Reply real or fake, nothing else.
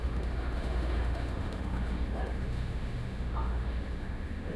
fake